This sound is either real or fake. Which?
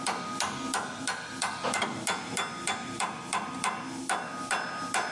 real